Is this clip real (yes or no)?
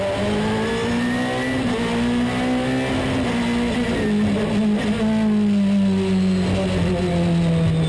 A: yes